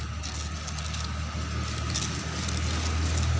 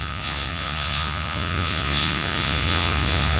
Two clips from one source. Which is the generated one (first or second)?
second